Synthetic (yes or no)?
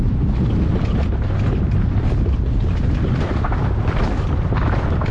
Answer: no